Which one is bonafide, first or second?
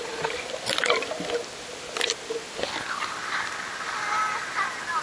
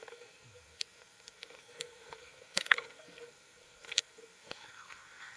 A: first